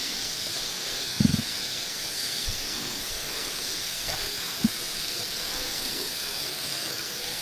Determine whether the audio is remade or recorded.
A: remade